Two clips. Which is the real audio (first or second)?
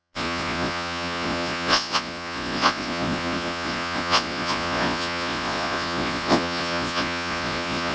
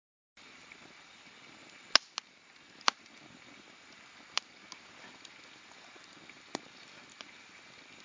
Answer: second